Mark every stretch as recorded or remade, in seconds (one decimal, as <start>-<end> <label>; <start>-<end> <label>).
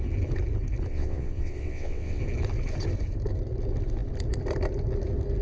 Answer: 0.0-0.9 recorded; 0.9-2.2 remade; 2.2-5.4 recorded